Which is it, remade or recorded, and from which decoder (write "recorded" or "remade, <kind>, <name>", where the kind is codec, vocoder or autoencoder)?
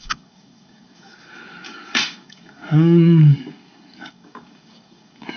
remade, codec, DAC